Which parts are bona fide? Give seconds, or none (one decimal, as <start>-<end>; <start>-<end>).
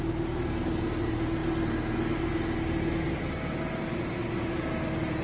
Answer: 0.0-5.2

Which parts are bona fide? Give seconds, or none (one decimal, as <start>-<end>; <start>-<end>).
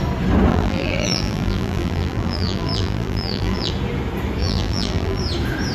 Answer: 0.0-0.5; 3.7-4.4; 5.2-5.7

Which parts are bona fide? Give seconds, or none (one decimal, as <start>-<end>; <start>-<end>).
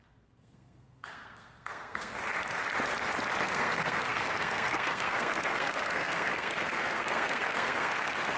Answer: 2.2-3.4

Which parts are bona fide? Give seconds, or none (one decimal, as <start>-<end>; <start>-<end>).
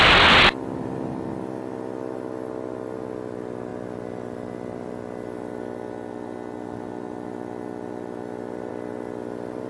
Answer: 0.0-9.7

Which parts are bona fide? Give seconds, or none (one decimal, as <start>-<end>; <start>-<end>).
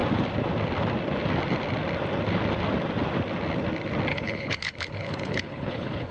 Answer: 0.0-4.1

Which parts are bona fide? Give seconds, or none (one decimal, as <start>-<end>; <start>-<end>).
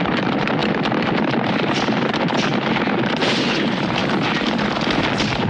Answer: 0.6-1.3; 2.5-3.1; 4.0-5.5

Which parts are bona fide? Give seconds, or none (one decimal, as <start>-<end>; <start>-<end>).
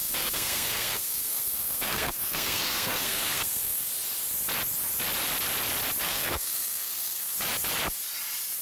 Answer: 3.9-6.0; 7.3-8.6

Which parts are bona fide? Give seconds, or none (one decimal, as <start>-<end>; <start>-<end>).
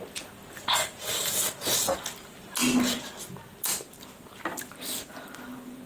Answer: 0.0-5.9